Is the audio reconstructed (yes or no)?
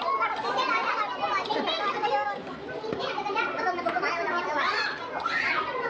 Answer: no